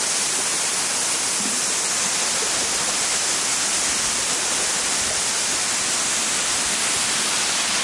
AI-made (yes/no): no